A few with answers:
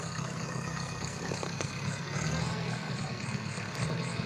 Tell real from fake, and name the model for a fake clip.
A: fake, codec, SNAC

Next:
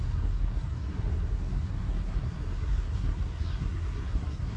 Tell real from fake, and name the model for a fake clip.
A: fake, codec, SNAC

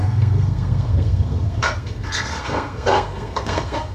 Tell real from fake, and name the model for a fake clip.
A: fake, codec, SNAC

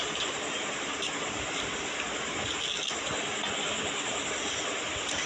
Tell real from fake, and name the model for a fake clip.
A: real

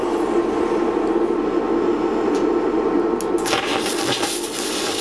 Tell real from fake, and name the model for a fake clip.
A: real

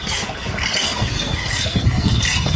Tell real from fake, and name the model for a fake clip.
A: fake, codec, SNAC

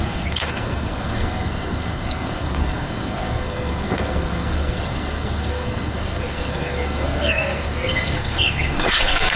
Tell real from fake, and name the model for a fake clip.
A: fake, codec, SNAC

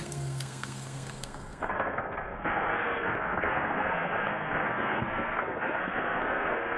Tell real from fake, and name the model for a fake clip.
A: fake, codec, SNAC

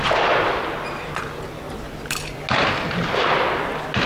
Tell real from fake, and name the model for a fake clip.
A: real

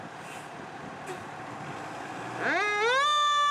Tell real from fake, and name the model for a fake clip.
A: real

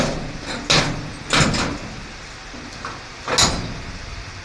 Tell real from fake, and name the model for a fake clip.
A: real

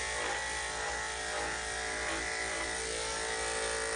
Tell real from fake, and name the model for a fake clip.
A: real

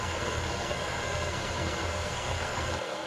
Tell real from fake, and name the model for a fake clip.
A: fake, codec, SNAC